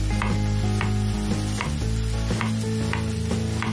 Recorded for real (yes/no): yes